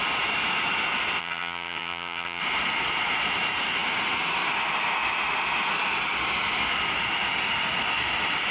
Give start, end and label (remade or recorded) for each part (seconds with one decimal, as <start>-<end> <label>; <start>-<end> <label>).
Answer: 0.0-1.2 recorded; 1.2-2.4 remade; 2.4-8.5 recorded